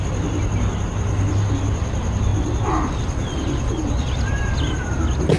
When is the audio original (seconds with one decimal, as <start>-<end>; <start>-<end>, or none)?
0.0-2.3; 4.9-5.4